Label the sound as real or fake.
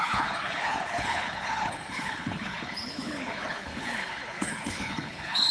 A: fake